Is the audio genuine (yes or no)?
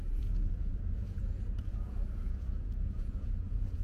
no